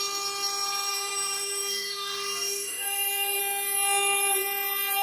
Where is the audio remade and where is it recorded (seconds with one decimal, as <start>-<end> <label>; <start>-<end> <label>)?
0.0-0.9 recorded; 0.9-3.4 remade; 3.4-5.0 recorded